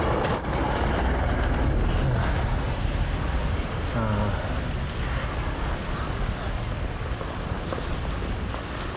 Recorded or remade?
recorded